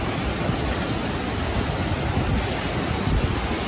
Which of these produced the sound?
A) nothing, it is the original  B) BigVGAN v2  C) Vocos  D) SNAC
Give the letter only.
A